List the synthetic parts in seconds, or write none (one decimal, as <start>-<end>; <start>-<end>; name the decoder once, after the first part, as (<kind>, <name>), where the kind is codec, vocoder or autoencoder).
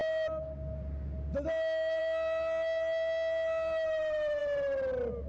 none